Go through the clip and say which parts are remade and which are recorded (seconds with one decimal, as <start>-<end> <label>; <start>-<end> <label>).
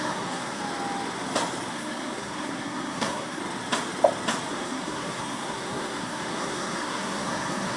0.0-0.6 remade; 0.6-1.7 recorded; 1.7-3.4 remade; 3.4-4.5 recorded; 4.5-7.8 remade